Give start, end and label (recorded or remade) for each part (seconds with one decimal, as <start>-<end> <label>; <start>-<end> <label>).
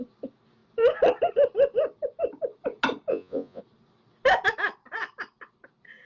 0.0-3.1 recorded; 3.1-3.6 remade; 3.6-6.0 recorded